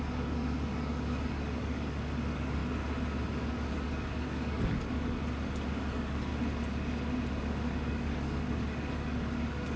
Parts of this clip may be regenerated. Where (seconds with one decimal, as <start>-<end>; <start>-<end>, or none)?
0.0-2.6; 3.3-5.2; 5.7-6.3; 7.3-9.8